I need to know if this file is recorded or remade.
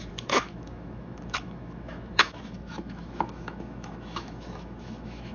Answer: remade